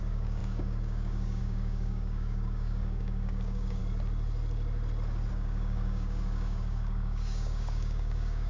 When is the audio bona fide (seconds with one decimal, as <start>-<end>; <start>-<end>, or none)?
3.8-5.3